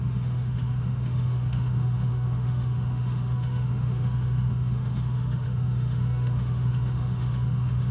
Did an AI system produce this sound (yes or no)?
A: yes